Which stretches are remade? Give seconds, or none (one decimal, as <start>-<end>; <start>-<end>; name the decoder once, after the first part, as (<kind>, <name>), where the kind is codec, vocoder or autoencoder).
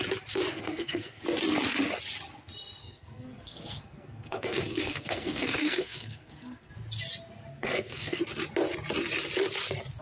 0.5-1.2 (codec, SNAC); 2.8-6.7; 7.5-8.2